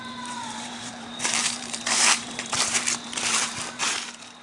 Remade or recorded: remade